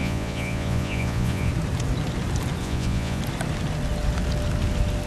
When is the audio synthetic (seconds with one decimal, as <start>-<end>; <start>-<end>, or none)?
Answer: 0.0-1.5; 2.6-3.2